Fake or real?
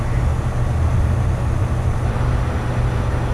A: real